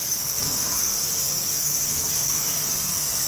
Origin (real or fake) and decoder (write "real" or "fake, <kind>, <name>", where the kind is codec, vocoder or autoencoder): fake, codec, SNAC